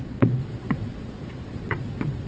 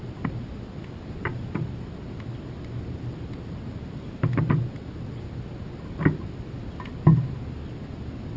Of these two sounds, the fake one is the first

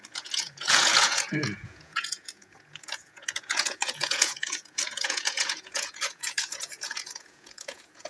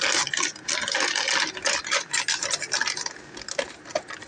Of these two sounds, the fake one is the first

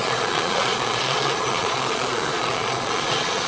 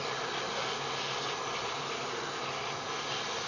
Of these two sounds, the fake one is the first